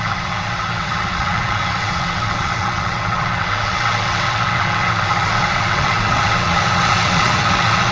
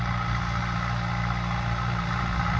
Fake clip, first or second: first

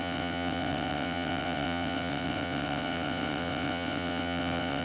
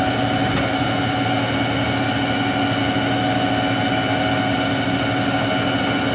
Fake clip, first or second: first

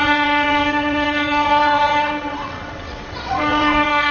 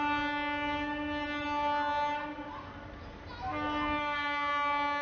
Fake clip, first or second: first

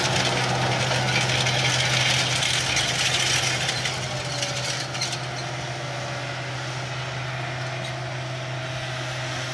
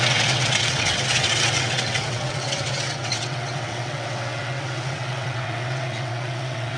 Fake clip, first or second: second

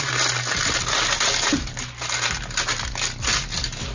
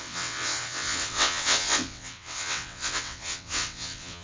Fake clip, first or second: second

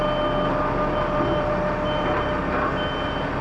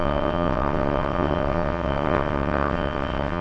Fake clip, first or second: second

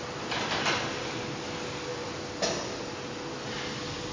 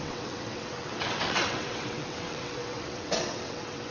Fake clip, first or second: second